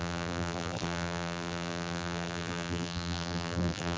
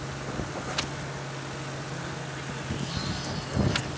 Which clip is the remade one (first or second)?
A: first